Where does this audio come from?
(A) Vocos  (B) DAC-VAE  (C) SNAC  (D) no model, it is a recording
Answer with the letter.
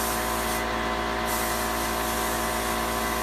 D